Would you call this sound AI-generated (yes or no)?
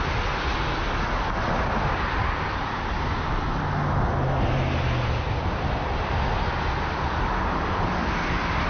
no